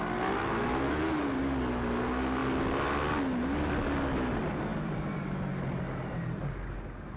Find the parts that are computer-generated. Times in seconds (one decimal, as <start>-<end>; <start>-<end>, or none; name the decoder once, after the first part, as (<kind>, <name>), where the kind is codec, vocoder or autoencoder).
4.7-6.2 (vocoder, BigVGAN v2)